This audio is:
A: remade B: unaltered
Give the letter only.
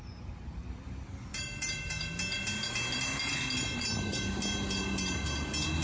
B